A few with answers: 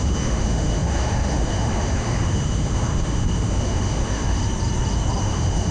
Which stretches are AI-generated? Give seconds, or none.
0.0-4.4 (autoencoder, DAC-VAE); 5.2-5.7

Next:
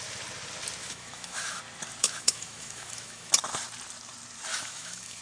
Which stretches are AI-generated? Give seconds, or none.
0.8-1.6 (autoencoder, DAC-VAE); 2.0-3.3; 4.5-5.2

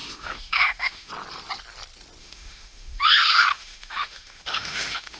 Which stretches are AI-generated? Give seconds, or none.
0.0-1.1 (autoencoder, DAC-VAE); 2.2-5.2

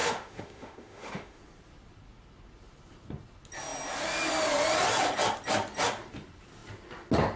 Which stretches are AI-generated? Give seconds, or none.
0.0-1.4 (autoencoder, DAC-VAE)

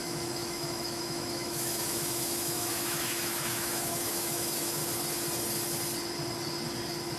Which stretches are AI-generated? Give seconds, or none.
0.0-4.8 (autoencoder, DAC-VAE)

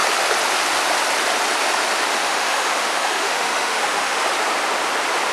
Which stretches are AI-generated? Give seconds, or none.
2.2-4.2 (autoencoder, DAC-VAE)

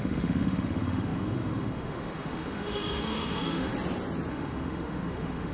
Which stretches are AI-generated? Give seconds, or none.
0.0-3.7 (autoencoder, DAC-VAE); 4.3-5.5